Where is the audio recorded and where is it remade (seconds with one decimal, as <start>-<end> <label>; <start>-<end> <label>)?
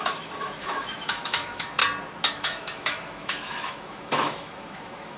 0.0-1.8 remade; 1.8-2.3 recorded; 2.3-5.2 remade